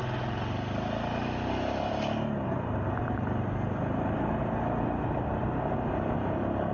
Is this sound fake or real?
real